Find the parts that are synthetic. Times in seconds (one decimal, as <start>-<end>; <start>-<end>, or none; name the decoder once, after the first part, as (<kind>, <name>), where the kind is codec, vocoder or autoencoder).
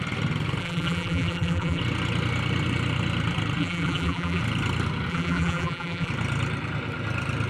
0.6-1.8 (vocoder, BigVGAN v2); 3.6-4.4; 5.1-6.1